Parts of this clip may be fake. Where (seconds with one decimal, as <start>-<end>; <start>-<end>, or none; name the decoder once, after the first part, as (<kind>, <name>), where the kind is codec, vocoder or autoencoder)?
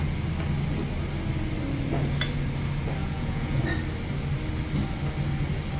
3.0-3.6 (vocoder, Vocos)